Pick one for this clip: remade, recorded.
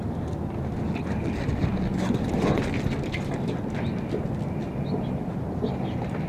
recorded